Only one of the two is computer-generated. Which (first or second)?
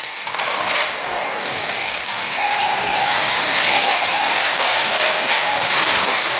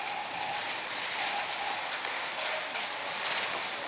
first